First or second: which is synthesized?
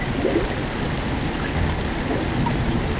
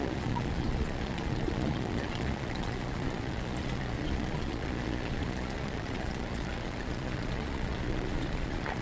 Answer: second